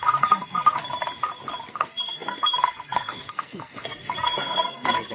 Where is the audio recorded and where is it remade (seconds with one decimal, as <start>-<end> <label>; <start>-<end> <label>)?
0.0-0.8 remade; 0.8-1.7 recorded; 1.7-5.1 remade